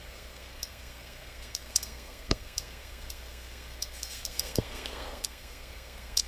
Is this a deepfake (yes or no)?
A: yes